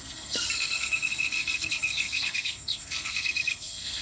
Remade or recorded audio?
remade